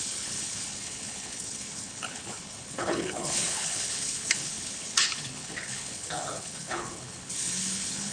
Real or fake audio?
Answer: fake